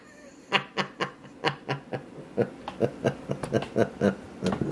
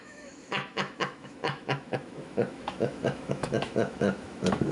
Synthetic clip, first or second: second